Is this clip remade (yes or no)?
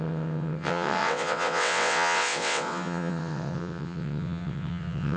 yes